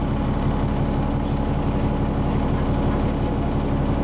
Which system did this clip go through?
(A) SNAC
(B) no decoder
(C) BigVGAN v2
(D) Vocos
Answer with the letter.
B